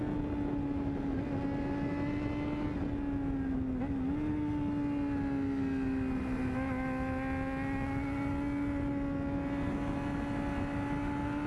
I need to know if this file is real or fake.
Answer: real